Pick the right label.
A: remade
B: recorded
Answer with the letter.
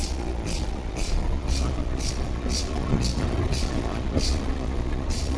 A